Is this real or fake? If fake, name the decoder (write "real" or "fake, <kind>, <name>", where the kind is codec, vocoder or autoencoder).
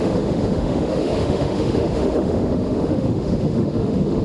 fake, autoencoder, DAC-VAE